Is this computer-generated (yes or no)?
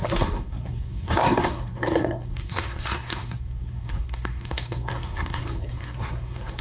yes